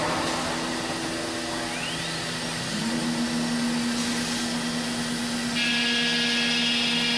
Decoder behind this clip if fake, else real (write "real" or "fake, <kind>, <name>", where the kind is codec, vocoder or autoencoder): real